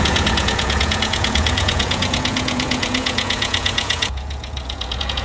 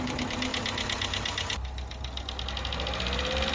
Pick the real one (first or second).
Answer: second